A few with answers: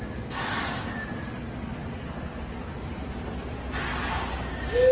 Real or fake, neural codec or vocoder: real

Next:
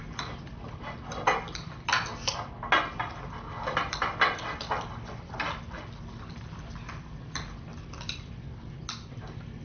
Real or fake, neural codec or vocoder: real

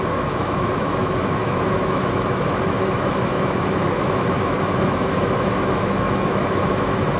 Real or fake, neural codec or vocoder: fake, autoencoder, DAC-VAE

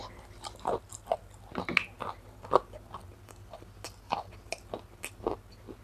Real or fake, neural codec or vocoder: real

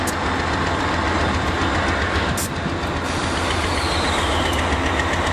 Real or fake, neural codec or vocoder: real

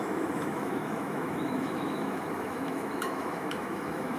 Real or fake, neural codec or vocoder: fake, autoencoder, DAC-VAE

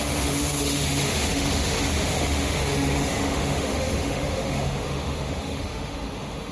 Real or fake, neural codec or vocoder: fake, autoencoder, DAC-VAE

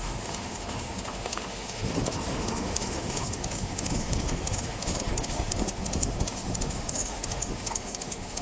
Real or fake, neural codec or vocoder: fake, autoencoder, DAC-VAE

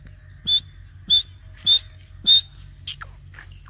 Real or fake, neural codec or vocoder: real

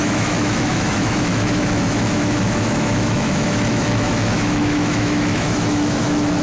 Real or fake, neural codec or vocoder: fake, autoencoder, DAC-VAE